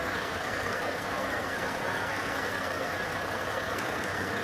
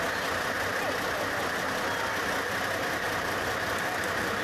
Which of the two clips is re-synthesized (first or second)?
first